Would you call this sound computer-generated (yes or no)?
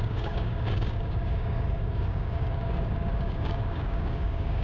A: yes